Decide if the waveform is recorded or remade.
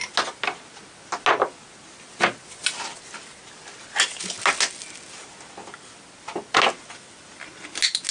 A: recorded